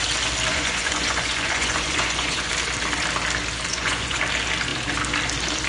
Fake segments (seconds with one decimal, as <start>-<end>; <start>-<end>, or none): 0.5-2.5; 3.7-4.2